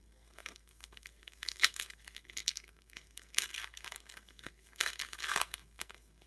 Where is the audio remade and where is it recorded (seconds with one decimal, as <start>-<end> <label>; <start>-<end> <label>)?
0.0-6.3 remade